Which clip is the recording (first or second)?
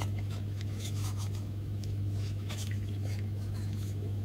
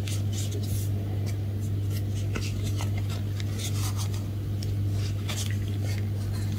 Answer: second